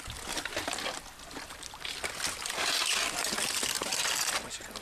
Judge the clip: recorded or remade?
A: recorded